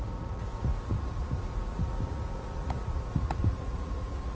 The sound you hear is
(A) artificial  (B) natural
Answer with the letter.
A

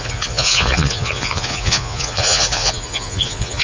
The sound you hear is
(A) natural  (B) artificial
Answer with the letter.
B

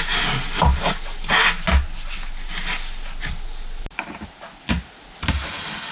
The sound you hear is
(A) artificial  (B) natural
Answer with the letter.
B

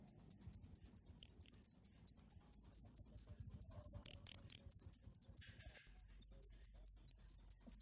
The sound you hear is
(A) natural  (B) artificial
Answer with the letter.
A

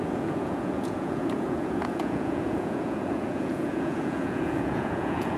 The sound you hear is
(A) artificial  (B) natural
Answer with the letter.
A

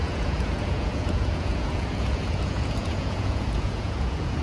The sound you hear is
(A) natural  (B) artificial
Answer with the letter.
B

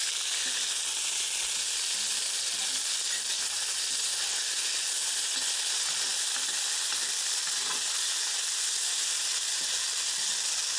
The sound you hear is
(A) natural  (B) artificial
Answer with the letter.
A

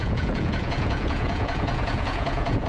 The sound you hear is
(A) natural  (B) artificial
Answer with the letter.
B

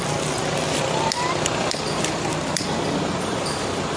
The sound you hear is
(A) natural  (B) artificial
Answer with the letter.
A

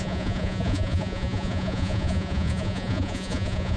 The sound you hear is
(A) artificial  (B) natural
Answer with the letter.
A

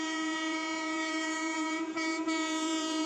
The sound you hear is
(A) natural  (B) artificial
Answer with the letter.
B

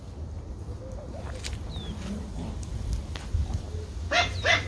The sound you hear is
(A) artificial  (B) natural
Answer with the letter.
B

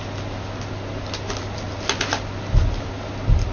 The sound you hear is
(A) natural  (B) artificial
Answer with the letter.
A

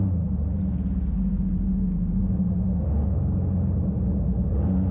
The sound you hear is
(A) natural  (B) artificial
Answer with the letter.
A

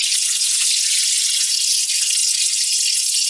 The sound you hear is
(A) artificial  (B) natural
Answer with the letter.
A